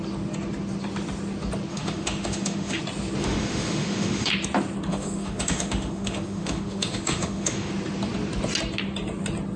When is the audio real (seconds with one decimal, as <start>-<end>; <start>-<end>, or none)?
0.0-1.7; 2.8-3.2; 4.3-4.9; 7.7-9.6